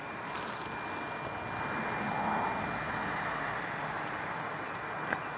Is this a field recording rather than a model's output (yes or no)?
yes